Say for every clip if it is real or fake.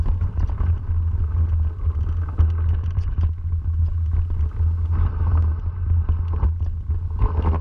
real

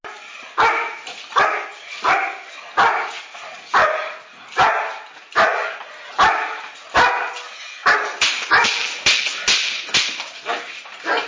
real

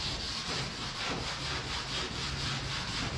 real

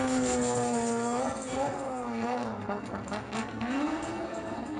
fake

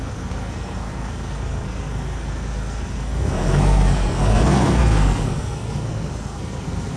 fake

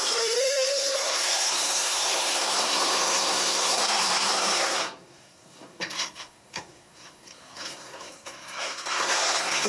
fake